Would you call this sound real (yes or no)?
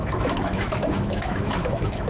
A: no